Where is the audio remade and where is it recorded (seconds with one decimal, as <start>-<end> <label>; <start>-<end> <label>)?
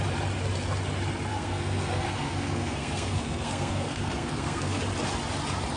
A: 0.0-1.3 recorded; 1.3-4.8 remade; 4.8-5.8 recorded